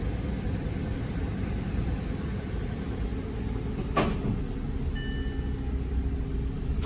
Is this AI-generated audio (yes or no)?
no